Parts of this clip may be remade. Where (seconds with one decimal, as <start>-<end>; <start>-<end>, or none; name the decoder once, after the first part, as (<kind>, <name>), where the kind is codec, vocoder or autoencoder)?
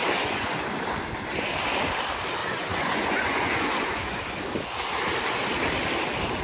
0.0-0.7 (vocoder, Vocos); 2.4-4.2